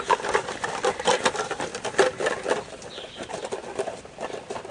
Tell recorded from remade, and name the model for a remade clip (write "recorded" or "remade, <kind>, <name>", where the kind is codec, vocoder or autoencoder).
recorded